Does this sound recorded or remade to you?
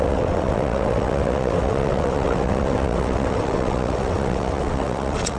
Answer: remade